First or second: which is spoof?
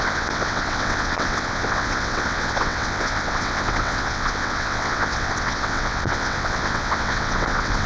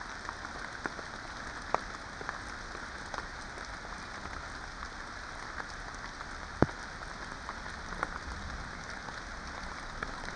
first